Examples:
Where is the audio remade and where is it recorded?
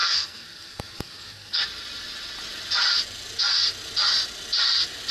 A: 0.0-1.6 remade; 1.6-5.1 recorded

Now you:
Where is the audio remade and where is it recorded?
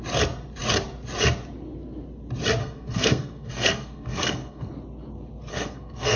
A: 0.0-2.6 recorded; 2.6-4.7 remade; 4.7-5.5 recorded; 5.5-6.2 remade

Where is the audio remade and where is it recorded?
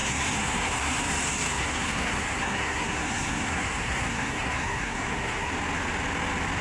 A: 0.0-1.0 remade; 1.0-1.5 recorded; 1.5-5.5 remade; 5.5-6.6 recorded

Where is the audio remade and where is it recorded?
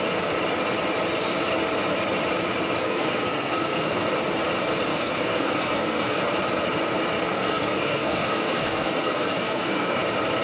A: 0.0-2.8 recorded; 2.8-4.1 remade; 4.1-4.9 recorded; 4.9-6.2 remade; 6.2-7.1 recorded; 7.1-10.0 remade; 10.0-10.4 recorded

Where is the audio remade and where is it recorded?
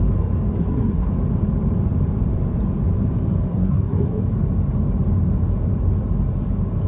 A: 0.0-0.6 recorded; 0.6-1.1 remade; 1.1-3.5 recorded; 3.5-4.2 remade; 4.2-6.9 recorded